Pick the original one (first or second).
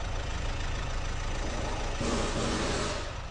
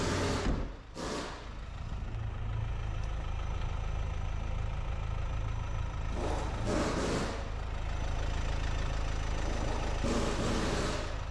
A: second